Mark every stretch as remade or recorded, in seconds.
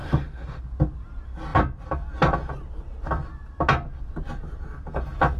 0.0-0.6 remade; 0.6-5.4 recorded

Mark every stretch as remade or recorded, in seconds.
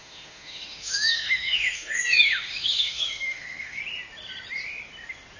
0.0-3.8 remade; 3.8-5.4 recorded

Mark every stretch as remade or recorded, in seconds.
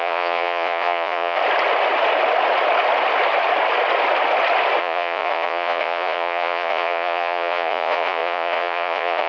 0.0-1.4 remade; 1.4-4.8 recorded; 4.8-9.3 remade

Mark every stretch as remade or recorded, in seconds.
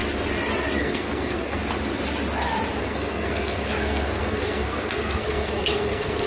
0.0-0.8 recorded; 0.8-1.6 remade; 1.6-2.8 recorded; 2.8-6.3 remade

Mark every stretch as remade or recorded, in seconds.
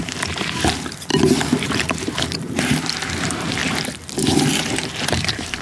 0.0-3.6 remade; 3.6-4.5 recorded; 4.5-5.6 remade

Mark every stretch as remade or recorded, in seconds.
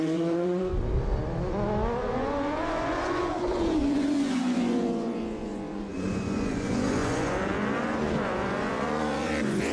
0.0-0.7 remade; 0.7-2.0 recorded; 2.0-9.7 remade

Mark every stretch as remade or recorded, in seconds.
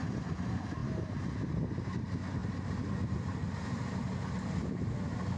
0.0-5.4 recorded